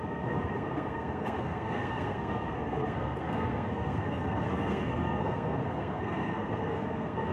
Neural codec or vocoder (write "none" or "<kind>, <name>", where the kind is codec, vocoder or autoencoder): codec, SNAC